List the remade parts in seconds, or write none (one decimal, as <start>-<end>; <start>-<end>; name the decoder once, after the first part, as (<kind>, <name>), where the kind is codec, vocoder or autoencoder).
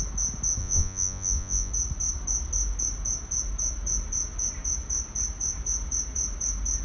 0.6-1.7 (vocoder, Vocos)